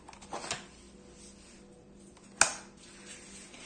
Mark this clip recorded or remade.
recorded